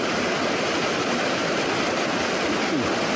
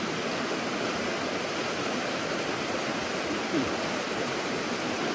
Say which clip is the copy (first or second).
second